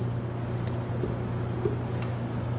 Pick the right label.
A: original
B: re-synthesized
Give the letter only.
A